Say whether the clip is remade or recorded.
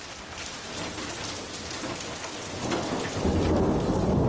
recorded